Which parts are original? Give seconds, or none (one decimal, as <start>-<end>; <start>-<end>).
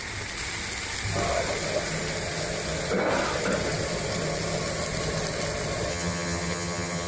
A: 0.0-5.9